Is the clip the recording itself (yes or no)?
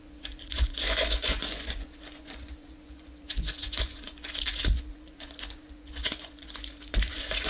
no